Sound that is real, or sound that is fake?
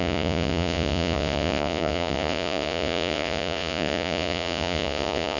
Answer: fake